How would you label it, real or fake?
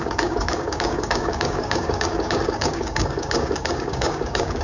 fake